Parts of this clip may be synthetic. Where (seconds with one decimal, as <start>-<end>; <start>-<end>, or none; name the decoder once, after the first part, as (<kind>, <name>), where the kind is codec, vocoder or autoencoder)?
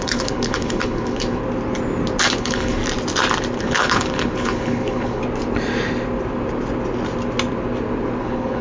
0.0-1.4 (codec, HILCodec); 2.4-2.8; 3.6-5.2; 8.2-8.6